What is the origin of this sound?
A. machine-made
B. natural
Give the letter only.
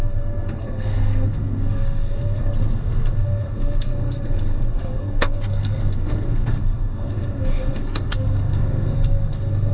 A